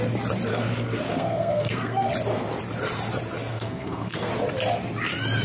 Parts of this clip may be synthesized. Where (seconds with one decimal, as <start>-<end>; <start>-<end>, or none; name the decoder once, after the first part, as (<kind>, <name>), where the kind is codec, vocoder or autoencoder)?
0.5-2.1 (codec, SNAC); 3.5-4.3